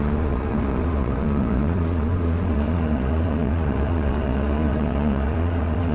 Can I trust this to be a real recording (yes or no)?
no